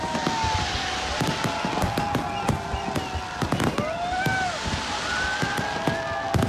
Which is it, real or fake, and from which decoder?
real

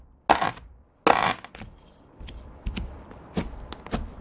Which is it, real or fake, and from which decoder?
real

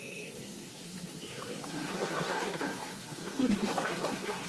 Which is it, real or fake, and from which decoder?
fake, codec, SNAC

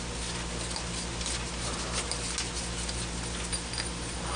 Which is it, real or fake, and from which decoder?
real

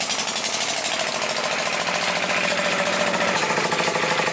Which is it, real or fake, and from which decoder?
real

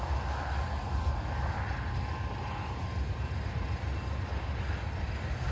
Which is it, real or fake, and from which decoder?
real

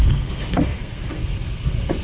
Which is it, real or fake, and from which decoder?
fake, codec, SNAC